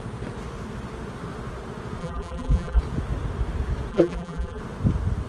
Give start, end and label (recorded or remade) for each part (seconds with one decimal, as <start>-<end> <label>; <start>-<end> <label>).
0.0-2.0 recorded; 2.0-2.8 remade; 2.8-3.9 recorded; 3.9-4.6 remade; 4.6-5.3 recorded